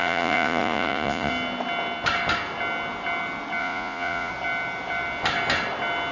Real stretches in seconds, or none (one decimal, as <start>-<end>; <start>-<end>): 1.3-3.6; 4.3-6.1